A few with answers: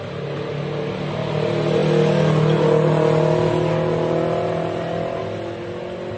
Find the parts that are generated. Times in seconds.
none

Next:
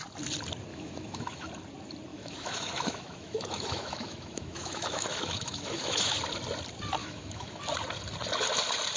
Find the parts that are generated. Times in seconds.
0.7-1.5 (autoencoder, DAC-VAE); 2.1-6.2; 7.0-7.6

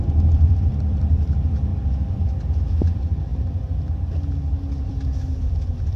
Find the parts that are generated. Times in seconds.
0.0-1.7 (vocoder, BigVGAN v2); 2.7-3.3; 4.8-6.0

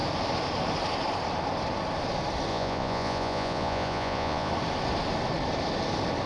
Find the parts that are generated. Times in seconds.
2.5-4.5 (vocoder, Vocos)